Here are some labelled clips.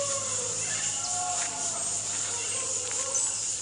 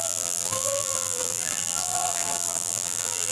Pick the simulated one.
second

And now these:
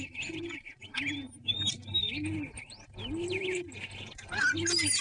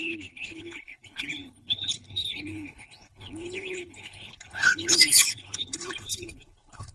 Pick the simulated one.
second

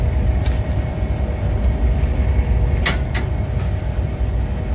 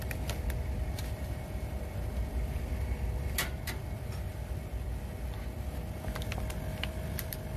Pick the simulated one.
second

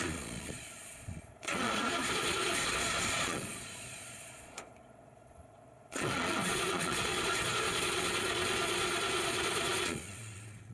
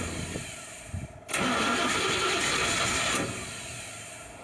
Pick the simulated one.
first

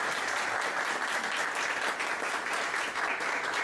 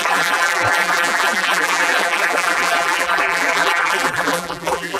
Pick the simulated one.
second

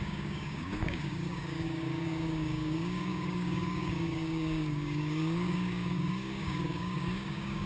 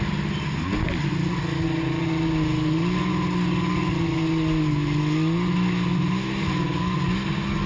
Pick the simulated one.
first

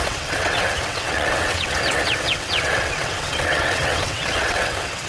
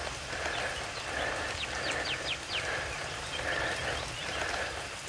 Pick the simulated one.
first